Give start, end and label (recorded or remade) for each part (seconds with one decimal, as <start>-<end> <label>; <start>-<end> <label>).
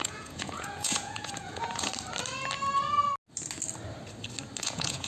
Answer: 0.0-1.9 remade; 1.9-4.6 recorded; 4.6-5.1 remade